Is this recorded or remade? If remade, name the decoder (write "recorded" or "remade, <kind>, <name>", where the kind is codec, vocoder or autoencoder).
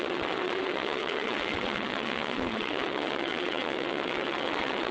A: remade, vocoder, WaveNeXt